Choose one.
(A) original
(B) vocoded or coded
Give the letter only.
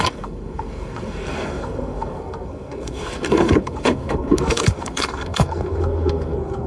B